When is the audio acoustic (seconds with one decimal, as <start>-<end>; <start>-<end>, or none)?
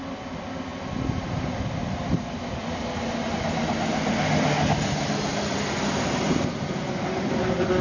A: 0.0-7.8